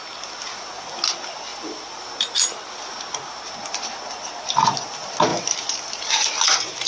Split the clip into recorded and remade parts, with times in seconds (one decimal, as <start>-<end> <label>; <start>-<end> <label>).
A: 0.0-6.9 recorded